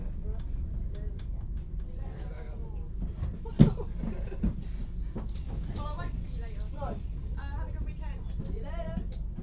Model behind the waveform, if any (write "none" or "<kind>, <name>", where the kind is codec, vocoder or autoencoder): none